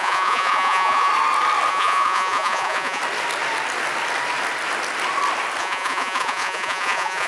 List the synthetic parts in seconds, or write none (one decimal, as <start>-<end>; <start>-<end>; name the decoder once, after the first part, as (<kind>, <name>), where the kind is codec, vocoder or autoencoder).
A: 0.0-1.1 (vocoder, Vocos); 1.7-3.0; 5.6-7.3